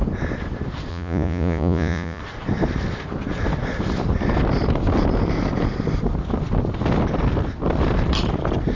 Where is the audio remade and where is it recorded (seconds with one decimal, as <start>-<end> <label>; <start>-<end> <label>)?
0.0-0.9 recorded; 0.9-2.2 remade; 2.2-8.8 recorded